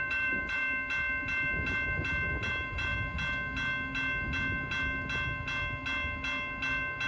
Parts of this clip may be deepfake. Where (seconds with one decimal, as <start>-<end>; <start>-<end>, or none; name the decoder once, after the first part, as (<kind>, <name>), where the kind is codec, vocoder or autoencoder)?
0.0-0.6 (vocoder, BigVGAN v2); 2.5-2.9